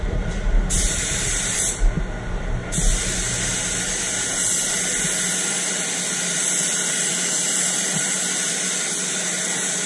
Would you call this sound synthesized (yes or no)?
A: no